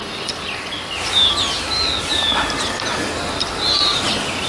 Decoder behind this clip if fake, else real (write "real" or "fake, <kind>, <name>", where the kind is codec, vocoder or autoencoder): real